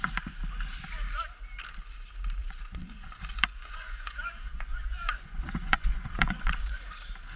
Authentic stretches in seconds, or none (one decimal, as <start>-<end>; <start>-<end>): 0.0-2.4; 6.8-7.4